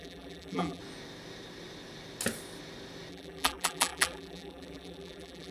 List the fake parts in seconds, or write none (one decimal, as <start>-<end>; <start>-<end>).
0.0-0.8; 3.1-5.5